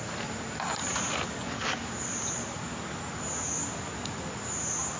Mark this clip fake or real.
real